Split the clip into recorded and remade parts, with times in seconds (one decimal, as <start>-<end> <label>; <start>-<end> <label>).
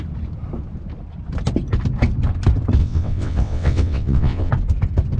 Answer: 0.0-2.8 recorded; 2.8-4.5 remade; 4.5-5.2 recorded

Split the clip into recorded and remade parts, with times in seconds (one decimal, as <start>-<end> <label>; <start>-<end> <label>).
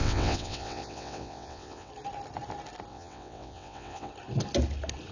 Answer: 0.0-1.9 remade; 1.9-2.9 recorded; 2.9-4.1 remade; 4.1-5.1 recorded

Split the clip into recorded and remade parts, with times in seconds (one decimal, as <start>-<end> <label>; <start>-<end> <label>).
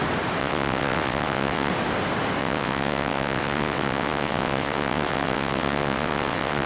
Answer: 0.0-0.4 recorded; 0.4-1.7 remade; 1.7-2.4 recorded; 2.4-6.7 remade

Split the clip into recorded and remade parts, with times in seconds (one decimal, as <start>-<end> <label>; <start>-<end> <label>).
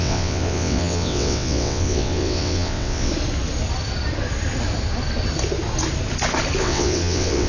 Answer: 0.0-3.1 remade; 3.1-6.6 recorded; 6.6-7.5 remade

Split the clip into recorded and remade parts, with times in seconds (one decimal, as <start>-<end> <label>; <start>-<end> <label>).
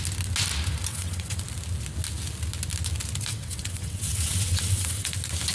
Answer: 0.0-0.9 recorded; 0.9-1.4 remade; 1.4-3.3 recorded; 3.3-5.1 remade; 5.1-5.5 recorded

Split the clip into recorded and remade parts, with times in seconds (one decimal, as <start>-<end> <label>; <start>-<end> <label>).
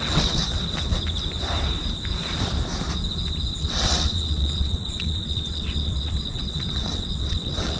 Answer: 0.0-0.4 remade; 0.4-3.6 recorded; 3.6-7.8 remade